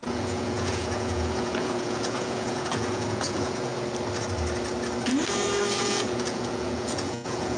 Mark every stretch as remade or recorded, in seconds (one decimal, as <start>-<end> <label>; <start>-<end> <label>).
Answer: 0.0-3.7 remade; 3.7-5.8 recorded; 5.8-7.6 remade